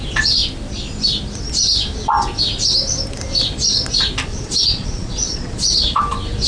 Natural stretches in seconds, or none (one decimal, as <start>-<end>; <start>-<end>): 0.0-4.3; 6.0-6.5

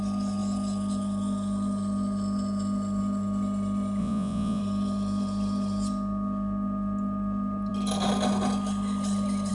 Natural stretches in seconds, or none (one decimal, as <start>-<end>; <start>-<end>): 0.0-4.0; 4.6-9.5

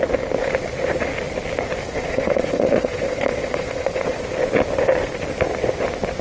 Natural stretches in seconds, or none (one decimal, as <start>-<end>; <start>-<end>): 0.0-1.8; 4.2-6.2

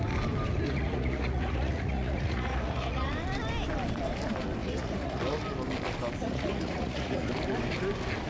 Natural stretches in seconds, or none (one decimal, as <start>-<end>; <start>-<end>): 0.0-0.7; 3.1-4.6; 5.2-6.2; 7.3-8.3

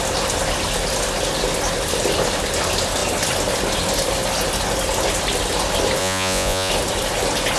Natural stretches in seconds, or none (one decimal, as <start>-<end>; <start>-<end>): 0.0-6.0; 6.7-7.6

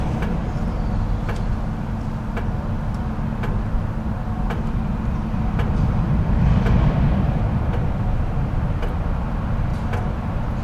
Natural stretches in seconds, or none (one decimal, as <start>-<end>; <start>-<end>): 0.0-10.6

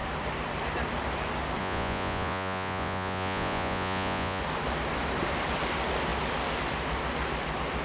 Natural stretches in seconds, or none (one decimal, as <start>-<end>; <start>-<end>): 0.0-1.6; 4.4-7.8